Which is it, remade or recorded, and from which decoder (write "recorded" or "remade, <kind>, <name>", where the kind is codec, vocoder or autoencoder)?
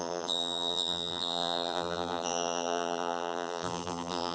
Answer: remade, vocoder, BigVGAN v2